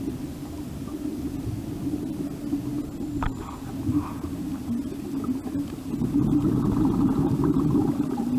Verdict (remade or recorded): recorded